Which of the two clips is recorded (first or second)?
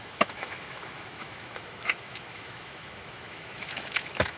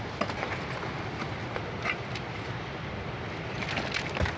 second